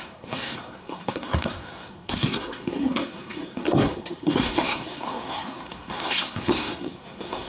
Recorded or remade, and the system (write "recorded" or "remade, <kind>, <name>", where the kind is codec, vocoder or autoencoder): remade, codec, SNAC